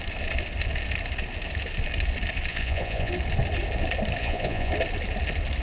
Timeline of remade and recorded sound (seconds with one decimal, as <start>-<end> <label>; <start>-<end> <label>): 0.0-2.5 recorded; 2.5-3.1 remade; 3.1-4.2 recorded; 4.2-4.7 remade; 4.7-5.6 recorded

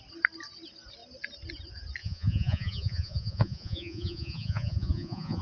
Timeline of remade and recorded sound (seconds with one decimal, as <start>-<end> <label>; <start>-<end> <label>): 0.0-2.0 recorded; 2.0-5.4 remade

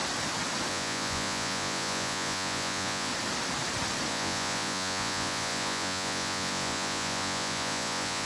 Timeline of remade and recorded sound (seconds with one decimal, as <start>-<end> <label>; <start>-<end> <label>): 0.0-0.7 recorded; 0.7-3.1 remade; 3.1-4.1 recorded; 4.1-8.3 remade

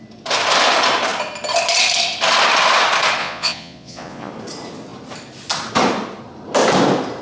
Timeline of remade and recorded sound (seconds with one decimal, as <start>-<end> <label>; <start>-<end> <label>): 0.0-3.2 recorded; 3.2-4.3 remade; 4.3-7.2 recorded